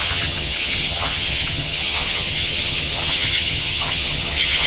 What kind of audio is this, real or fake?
fake